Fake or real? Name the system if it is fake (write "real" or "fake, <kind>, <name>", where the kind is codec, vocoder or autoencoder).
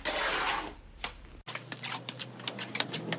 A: real